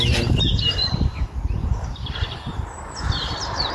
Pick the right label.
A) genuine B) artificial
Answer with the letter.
A